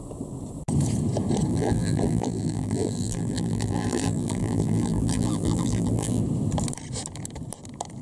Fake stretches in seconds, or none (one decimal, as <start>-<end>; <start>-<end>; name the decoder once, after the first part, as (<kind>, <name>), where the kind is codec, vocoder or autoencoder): 1.5-6.2 (vocoder, BigVGAN v2)